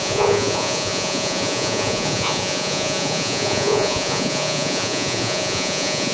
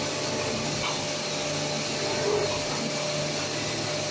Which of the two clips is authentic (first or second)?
second